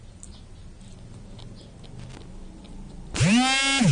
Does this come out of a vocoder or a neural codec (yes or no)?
no